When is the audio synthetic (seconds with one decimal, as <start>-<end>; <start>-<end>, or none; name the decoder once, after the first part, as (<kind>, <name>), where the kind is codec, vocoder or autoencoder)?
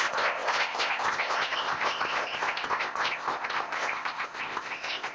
0.0-5.1 (codec, ZipCodec)